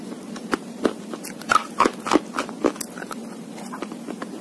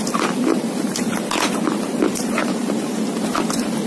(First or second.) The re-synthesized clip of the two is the second